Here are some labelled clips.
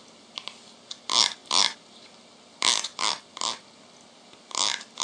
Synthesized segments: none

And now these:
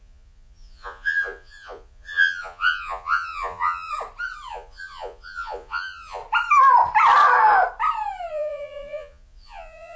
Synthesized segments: 0.0-3.9 (vocoder, Vocos); 4.5-6.2; 8.3-10.0

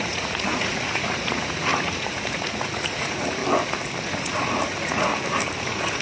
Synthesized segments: 0.0-3.4 (vocoder, Vocos); 4.0-5.1; 5.6-6.0

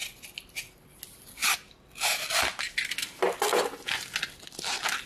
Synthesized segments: none

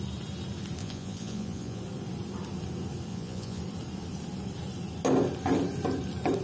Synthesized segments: 0.8-1.8 (vocoder, Vocos); 3.1-3.6

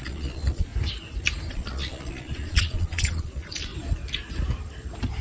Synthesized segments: 0.0-0.7 (vocoder, Vocos); 1.5-3.7